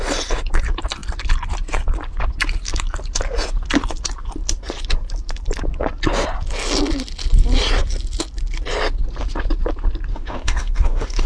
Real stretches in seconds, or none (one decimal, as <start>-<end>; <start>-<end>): 0.0-10.1